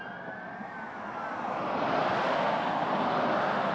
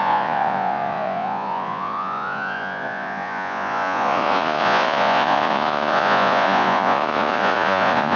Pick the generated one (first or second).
second